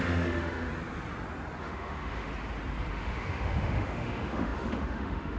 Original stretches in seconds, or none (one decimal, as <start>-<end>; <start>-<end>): 0.7-1.6; 2.3-2.9